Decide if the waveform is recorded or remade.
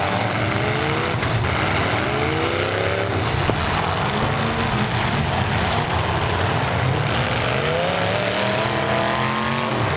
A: recorded